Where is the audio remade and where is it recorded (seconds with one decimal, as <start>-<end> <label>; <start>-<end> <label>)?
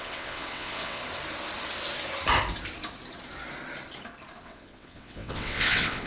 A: 0.0-1.0 remade; 1.0-4.4 recorded; 4.4-6.1 remade